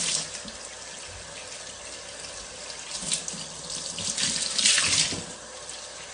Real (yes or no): yes